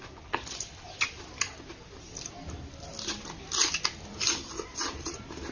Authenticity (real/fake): real